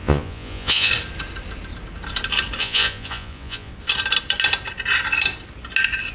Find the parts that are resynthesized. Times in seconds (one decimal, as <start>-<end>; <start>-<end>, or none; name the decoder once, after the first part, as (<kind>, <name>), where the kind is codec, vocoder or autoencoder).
0.0-0.9 (vocoder, Vocos); 2.6-3.7